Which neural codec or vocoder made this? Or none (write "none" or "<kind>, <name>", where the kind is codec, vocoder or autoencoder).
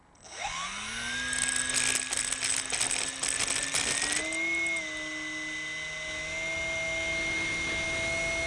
none